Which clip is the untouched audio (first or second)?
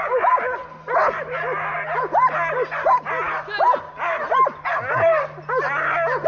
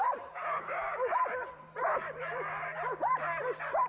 first